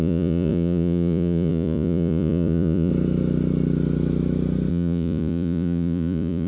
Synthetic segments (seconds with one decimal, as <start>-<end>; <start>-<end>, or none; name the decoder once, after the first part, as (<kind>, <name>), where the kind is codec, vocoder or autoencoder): 0.0-2.9 (vocoder, Vocos); 4.7-6.5